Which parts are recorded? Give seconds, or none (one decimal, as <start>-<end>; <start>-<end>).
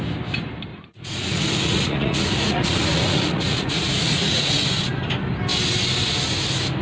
0.0-0.7; 4.5-6.8